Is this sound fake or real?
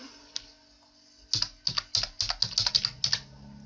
real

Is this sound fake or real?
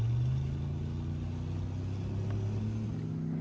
real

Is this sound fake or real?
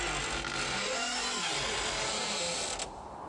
real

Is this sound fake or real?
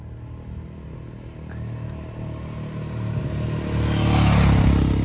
real